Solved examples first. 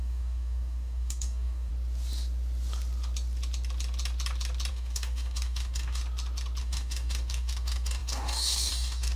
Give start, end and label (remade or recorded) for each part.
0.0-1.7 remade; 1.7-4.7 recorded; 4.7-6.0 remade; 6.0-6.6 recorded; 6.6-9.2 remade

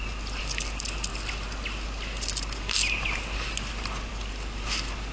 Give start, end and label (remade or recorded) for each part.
0.0-5.1 recorded

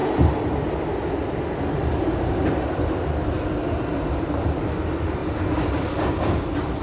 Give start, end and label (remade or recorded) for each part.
0.0-4.1 recorded; 4.1-5.2 remade; 5.2-5.8 recorded; 5.8-6.8 remade

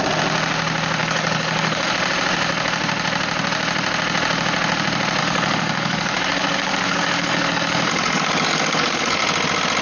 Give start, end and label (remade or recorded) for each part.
0.0-1.0 recorded; 1.0-1.9 remade; 1.9-5.2 recorded; 5.2-9.2 remade; 9.2-9.8 recorded

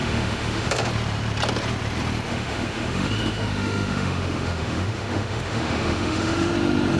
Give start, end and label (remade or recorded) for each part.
0.0-0.9 remade; 0.9-2.3 recorded; 2.3-6.5 remade; 6.5-7.0 recorded

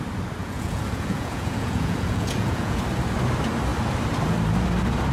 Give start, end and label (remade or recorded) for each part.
0.0-0.4 recorded; 0.4-2.8 remade; 2.8-5.1 recorded

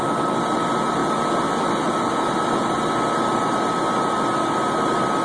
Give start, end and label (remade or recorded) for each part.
0.0-5.2 recorded

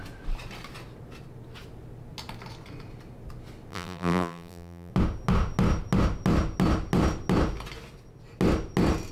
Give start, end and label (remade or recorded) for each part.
0.0-3.7 recorded; 3.7-4.9 remade; 4.9-9.1 recorded